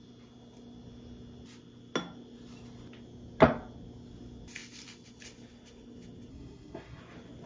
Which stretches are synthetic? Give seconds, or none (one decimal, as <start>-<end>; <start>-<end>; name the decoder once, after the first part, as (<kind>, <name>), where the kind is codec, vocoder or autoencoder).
6.3-7.0 (codec, SNAC)